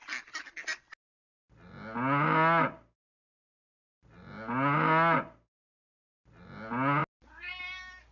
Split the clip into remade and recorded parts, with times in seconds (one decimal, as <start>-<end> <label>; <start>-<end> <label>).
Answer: 0.0-8.1 recorded

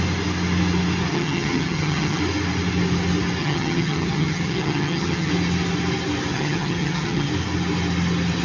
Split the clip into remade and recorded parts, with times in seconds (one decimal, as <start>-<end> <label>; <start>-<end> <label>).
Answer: 0.0-1.1 recorded; 1.1-2.2 remade; 2.2-3.4 recorded; 3.4-5.3 remade; 5.3-6.3 recorded; 6.3-7.3 remade; 7.3-8.4 recorded

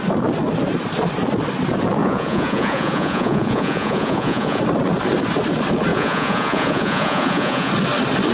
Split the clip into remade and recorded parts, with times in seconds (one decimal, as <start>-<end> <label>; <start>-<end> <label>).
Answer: 0.0-2.0 recorded; 2.0-4.6 remade; 4.6-5.9 recorded; 5.9-7.7 remade; 7.7-8.3 recorded